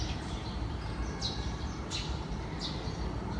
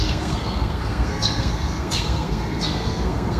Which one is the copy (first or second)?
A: second